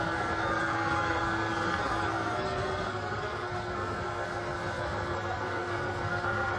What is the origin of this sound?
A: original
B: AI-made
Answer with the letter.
B